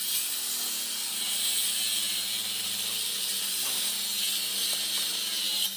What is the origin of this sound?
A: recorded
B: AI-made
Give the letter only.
A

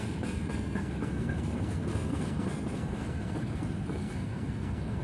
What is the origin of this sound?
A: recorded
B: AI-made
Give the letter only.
B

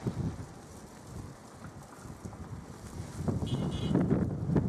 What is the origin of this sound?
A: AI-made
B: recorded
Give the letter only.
B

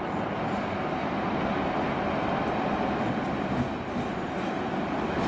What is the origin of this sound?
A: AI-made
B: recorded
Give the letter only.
B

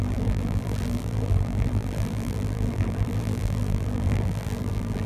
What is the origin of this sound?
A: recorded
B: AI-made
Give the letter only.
B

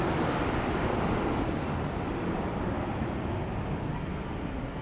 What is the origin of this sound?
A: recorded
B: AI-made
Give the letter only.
A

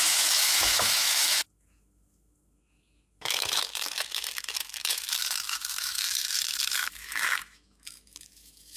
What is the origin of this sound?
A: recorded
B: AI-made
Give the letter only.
B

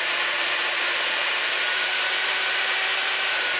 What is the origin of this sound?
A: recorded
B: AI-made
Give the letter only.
B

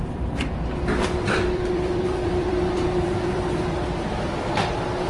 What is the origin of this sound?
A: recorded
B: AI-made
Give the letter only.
B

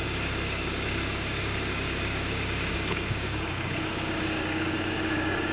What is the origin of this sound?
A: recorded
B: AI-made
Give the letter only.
B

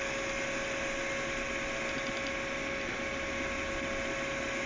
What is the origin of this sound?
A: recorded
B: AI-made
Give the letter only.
A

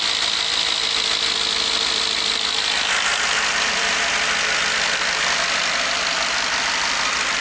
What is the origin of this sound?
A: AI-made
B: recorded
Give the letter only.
A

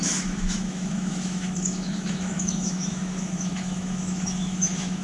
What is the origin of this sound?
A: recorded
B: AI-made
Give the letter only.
B